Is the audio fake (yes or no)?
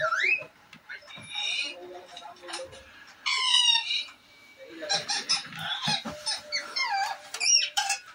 yes